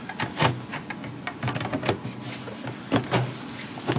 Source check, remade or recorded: recorded